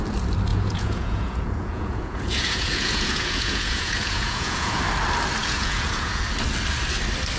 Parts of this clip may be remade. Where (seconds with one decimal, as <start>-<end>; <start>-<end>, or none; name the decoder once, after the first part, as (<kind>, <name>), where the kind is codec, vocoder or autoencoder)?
0.5-4.8 (vocoder, Vocos); 5.4-6.2